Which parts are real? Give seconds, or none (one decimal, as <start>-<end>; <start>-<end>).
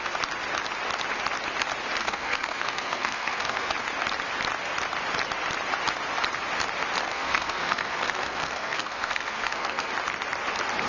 0.0-2.0; 3.7-7.1; 9.9-10.9